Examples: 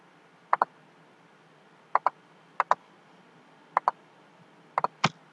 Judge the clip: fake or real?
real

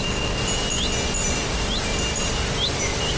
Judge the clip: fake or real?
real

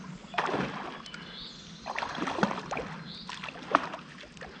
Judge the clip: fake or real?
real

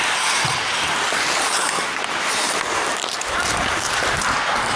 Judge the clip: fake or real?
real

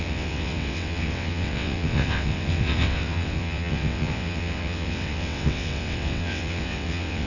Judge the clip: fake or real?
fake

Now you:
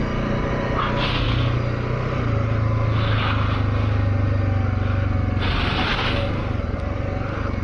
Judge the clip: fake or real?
real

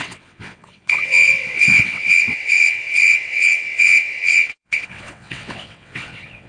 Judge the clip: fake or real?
fake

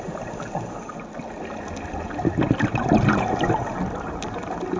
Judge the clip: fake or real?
real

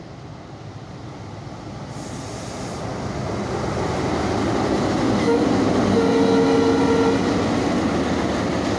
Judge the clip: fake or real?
real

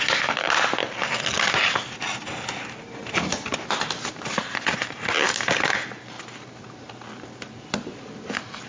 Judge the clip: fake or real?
real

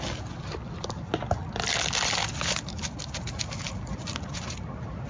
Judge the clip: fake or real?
real